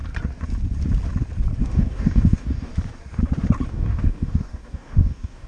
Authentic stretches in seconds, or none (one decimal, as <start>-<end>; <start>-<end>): 0.0-1.6; 2.7-3.7